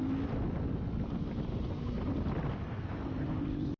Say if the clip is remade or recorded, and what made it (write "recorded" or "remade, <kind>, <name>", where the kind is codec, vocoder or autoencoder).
recorded